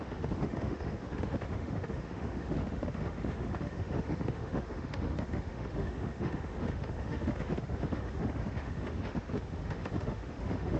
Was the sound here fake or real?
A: fake